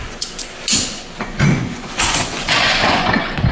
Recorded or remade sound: remade